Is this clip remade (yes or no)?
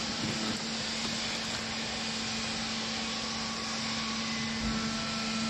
no